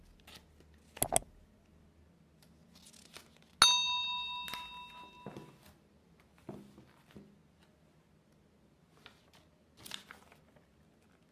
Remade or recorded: recorded